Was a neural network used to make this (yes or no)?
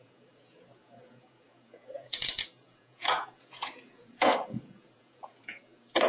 yes